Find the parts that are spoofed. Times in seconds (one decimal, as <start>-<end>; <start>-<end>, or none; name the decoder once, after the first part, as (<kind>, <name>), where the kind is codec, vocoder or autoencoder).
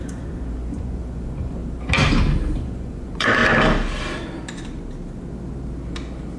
0.0-1.6 (vocoder, Vocos); 2.6-3.4